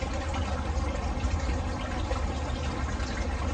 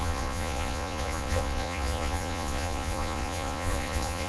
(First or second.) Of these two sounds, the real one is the first